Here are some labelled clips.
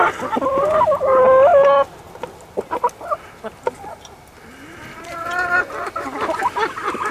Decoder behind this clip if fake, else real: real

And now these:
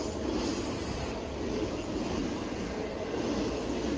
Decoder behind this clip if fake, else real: real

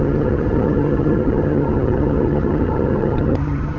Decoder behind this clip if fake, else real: fake, vocoder, HiFi-GAN